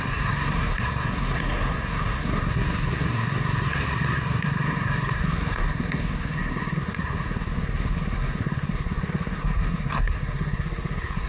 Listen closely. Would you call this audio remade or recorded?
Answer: remade